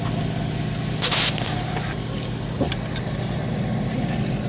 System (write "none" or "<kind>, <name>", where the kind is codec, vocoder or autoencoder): none